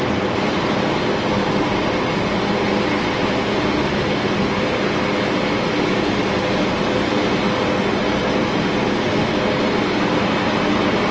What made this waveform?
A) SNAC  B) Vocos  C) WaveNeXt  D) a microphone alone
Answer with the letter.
D